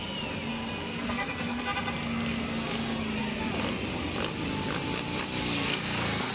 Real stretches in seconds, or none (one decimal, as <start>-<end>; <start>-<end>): 0.0-0.9; 1.6-5.4